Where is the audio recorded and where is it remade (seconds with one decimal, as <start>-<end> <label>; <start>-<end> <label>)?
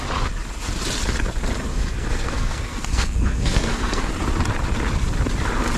0.0-1.7 recorded; 1.7-4.1 remade; 4.1-5.8 recorded